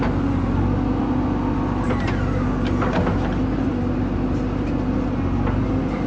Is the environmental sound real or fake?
real